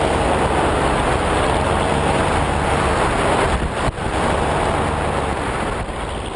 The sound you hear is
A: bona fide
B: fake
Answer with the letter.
A